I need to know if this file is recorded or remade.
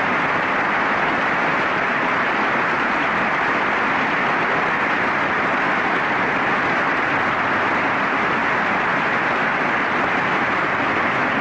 recorded